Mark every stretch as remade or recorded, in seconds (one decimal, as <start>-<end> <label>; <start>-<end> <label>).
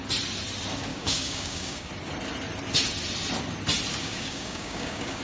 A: 0.0-0.9 recorded; 0.9-1.9 remade; 1.9-4.0 recorded; 4.0-5.2 remade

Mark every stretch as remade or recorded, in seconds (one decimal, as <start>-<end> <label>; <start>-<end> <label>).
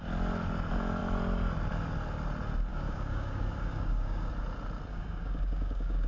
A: 0.0-2.7 recorded; 2.7-4.3 remade; 4.3-4.9 recorded; 4.9-6.1 remade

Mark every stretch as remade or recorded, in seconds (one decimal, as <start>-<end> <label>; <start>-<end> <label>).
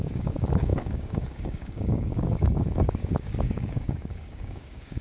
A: 0.0-5.0 remade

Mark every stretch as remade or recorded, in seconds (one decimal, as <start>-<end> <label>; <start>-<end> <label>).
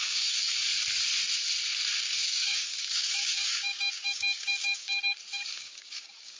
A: 0.0-0.7 remade; 0.7-2.2 recorded; 2.2-4.9 remade; 4.9-5.5 recorded; 5.5-6.4 remade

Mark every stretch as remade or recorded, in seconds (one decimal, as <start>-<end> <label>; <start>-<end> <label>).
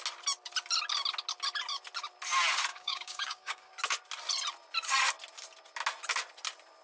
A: 0.0-2.7 recorded; 2.7-3.7 remade; 3.7-6.8 recorded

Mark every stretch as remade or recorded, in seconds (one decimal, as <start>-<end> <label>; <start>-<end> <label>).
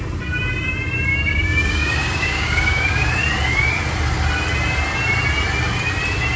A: 0.0-1.1 recorded; 1.1-3.1 remade; 3.1-6.4 recorded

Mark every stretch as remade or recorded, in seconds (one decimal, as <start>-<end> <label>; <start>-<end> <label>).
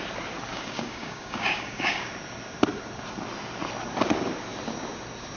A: 0.0-0.5 recorded; 0.5-2.1 remade; 2.1-5.4 recorded